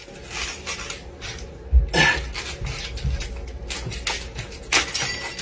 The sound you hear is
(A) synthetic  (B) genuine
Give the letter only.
B